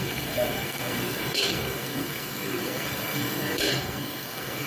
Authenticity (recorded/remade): remade